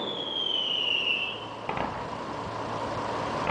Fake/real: fake